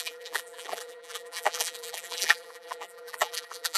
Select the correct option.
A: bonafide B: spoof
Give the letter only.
B